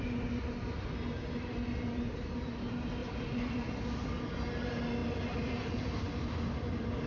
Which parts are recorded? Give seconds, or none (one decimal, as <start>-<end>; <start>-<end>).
0.0-3.0; 3.7-5.0; 6.2-7.1